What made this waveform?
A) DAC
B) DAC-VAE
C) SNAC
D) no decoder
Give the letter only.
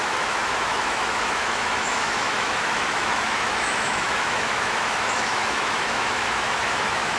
B